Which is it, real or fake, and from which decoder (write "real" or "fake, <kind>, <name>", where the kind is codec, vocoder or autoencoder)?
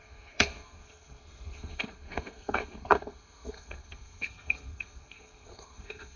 fake, codec, SNAC